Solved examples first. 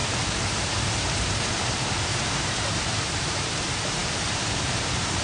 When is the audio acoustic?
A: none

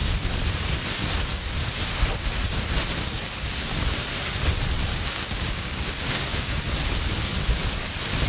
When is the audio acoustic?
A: 0.0-4.9; 6.6-8.3

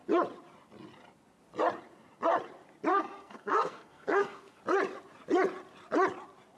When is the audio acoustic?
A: 0.0-2.9; 4.6-6.6

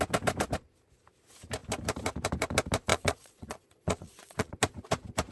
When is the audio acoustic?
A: 0.0-2.9; 4.5-5.3

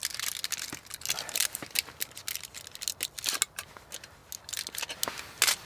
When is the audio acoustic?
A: 0.0-5.7